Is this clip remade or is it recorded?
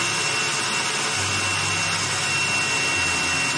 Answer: recorded